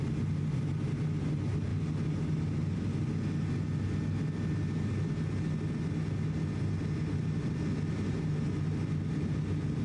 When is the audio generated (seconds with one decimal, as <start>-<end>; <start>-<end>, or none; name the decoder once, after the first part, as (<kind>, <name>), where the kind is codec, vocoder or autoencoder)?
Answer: none